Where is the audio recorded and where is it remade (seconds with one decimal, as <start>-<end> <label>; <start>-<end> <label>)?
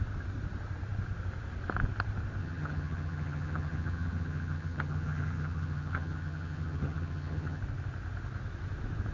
0.0-2.4 recorded; 2.4-7.6 remade; 7.6-9.1 recorded